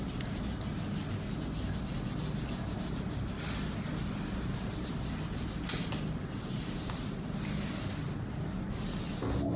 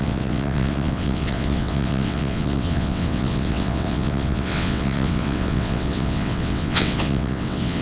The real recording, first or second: first